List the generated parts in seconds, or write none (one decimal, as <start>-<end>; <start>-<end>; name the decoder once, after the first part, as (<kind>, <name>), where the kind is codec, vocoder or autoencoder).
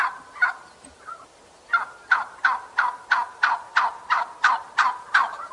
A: 0.0-2.4 (vocoder, BigVGAN v2); 5.1-5.5